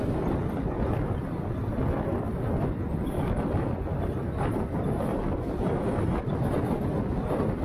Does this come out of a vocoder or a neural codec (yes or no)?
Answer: no